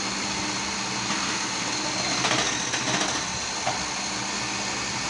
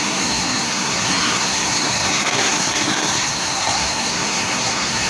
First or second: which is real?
first